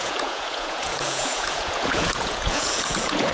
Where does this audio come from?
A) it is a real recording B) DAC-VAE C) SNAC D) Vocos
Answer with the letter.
D